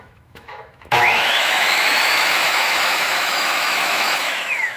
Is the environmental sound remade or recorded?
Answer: remade